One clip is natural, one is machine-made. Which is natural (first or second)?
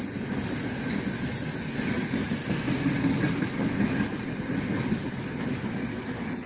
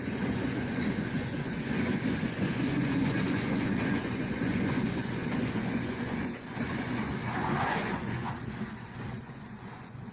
first